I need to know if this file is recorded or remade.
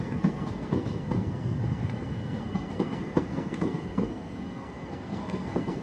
remade